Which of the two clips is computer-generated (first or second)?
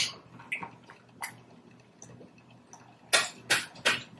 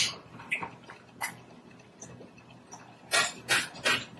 second